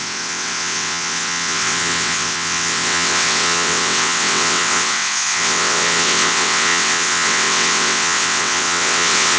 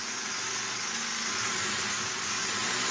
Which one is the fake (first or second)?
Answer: first